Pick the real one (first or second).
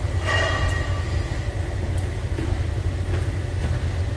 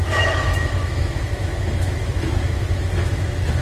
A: first